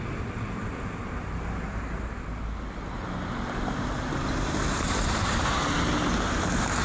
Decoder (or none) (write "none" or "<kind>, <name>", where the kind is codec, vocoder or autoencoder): none